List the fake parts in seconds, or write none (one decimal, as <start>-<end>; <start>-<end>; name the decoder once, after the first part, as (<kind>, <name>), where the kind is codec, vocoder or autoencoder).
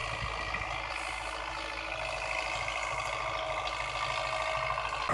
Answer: none